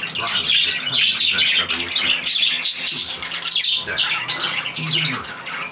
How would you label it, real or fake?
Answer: real